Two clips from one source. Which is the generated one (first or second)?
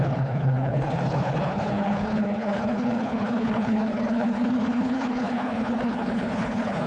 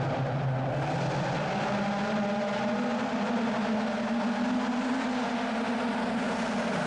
first